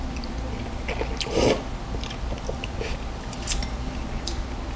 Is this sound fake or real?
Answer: real